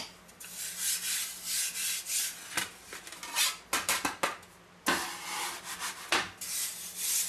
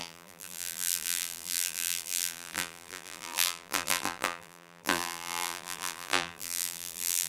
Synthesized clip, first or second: second